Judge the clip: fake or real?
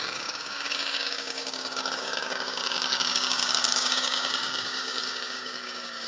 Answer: fake